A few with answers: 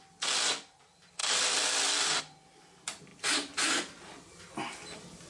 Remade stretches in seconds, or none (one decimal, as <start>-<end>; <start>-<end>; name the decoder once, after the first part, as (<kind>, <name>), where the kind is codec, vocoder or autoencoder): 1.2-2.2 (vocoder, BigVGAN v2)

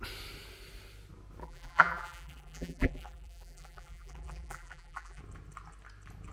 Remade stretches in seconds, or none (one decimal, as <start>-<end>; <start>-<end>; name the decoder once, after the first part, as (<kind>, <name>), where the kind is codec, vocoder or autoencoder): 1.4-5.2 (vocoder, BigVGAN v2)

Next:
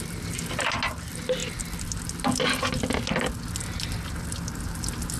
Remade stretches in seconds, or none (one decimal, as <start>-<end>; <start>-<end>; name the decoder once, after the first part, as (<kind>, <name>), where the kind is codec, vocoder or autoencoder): none

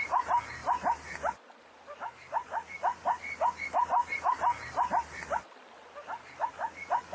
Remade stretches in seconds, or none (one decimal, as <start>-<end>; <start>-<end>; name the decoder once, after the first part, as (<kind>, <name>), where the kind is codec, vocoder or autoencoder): none